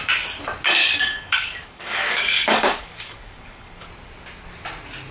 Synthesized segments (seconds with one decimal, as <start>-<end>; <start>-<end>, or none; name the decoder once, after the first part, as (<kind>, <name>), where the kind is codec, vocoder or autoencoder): 0.8-3.9 (codec, DAC)